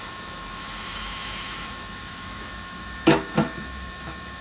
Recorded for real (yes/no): no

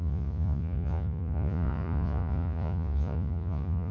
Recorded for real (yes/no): no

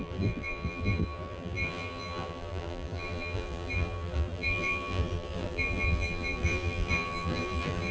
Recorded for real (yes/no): no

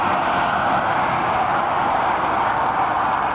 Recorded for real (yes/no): yes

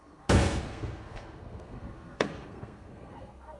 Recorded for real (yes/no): no